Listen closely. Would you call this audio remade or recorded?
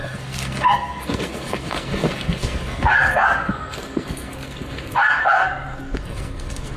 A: remade